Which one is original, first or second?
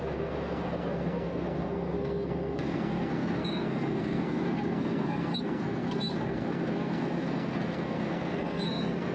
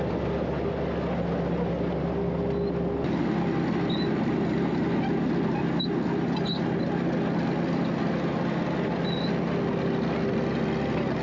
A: second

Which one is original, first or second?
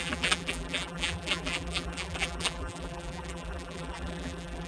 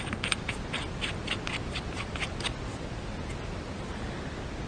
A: second